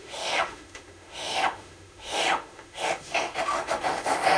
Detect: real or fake fake